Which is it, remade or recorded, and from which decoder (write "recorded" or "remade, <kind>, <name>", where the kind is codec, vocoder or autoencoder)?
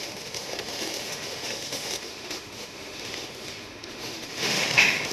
remade, autoencoder, DAC-VAE